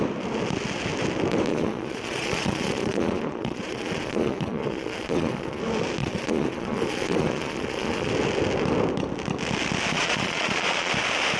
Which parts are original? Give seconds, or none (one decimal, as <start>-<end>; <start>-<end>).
0.0-1.5; 5.6-6.0; 8.1-9.9; 10.9-11.4